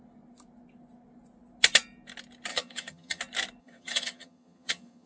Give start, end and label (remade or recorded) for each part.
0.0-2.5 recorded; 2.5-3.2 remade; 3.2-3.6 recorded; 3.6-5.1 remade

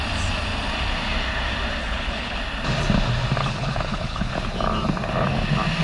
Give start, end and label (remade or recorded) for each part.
0.0-1.8 recorded; 1.8-2.4 remade; 2.4-3.4 recorded; 3.4-4.3 remade; 4.3-5.8 recorded

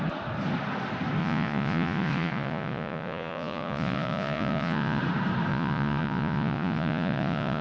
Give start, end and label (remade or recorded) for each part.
0.0-1.2 recorded; 1.2-5.0 remade; 5.0-5.5 recorded; 5.5-7.6 remade

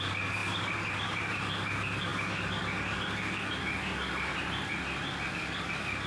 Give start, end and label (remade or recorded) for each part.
0.0-4.3 remade; 4.3-5.3 recorded; 5.3-6.1 remade

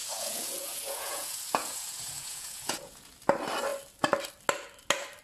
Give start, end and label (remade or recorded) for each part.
0.0-3.1 remade; 3.1-5.2 recorded

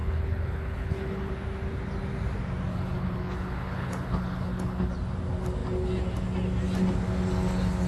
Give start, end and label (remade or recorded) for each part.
0.0-1.3 remade; 1.3-2.7 recorded; 2.7-4.9 remade; 4.9-7.9 recorded